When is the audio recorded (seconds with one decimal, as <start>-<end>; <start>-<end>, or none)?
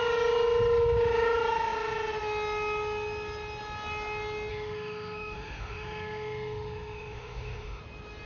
0.0-4.5; 7.8-8.3